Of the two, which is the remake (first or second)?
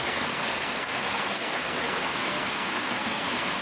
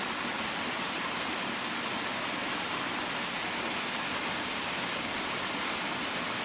first